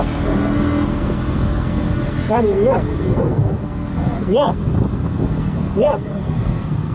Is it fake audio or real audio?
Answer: fake